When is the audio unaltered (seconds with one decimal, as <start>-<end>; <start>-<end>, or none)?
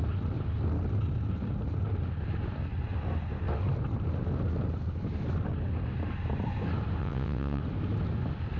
0.0-7.0; 7.6-8.6